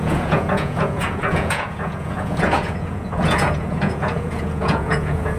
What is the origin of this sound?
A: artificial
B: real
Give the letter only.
A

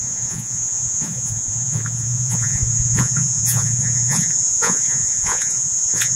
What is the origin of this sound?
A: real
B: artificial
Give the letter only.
B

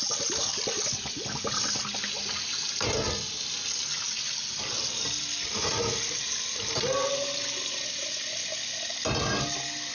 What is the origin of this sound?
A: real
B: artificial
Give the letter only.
A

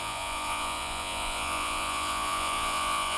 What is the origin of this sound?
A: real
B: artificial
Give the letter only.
B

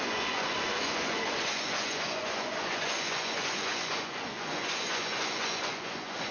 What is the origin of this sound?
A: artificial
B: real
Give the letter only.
A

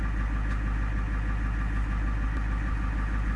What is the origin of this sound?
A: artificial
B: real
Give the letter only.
B